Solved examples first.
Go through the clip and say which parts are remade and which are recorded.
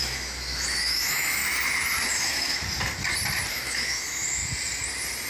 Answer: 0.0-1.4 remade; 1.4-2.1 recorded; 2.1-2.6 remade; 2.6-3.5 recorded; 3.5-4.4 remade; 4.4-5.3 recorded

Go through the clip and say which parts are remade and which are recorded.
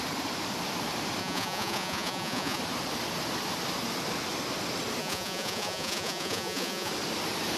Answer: 0.0-1.2 recorded; 1.2-2.6 remade; 2.6-5.0 recorded; 5.0-6.9 remade; 6.9-7.6 recorded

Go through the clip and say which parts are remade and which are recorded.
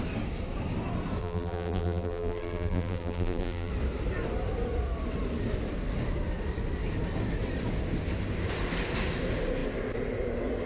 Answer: 0.0-1.2 recorded; 1.2-3.7 remade; 3.7-10.7 recorded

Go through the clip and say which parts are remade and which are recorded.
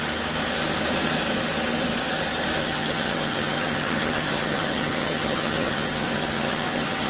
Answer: 0.0-2.6 recorded; 2.6-7.1 remade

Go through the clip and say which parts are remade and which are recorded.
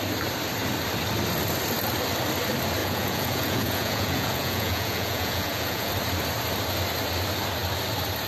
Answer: 0.0-2.8 recorded; 2.8-5.9 remade; 5.9-8.3 recorded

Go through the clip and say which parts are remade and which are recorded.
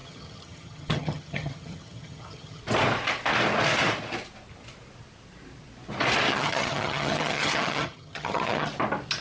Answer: 0.0-2.6 remade; 2.6-6.3 recorded; 6.3-8.7 remade; 8.7-9.2 recorded